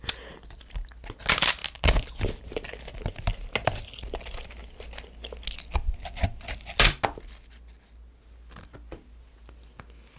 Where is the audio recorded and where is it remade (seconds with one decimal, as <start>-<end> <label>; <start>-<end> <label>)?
0.0-10.2 recorded